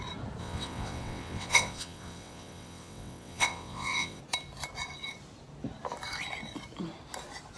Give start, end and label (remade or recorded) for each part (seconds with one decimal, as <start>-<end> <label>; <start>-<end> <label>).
0.0-0.4 recorded; 0.4-4.2 remade; 4.2-7.6 recorded